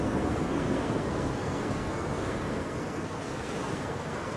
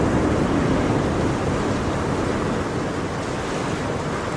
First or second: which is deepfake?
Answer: first